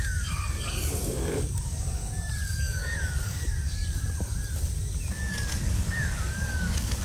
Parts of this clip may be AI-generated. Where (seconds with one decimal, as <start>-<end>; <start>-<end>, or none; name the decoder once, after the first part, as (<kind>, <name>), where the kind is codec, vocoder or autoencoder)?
0.0-2.0 (codec, DAC); 2.6-3.8; 5.1-7.0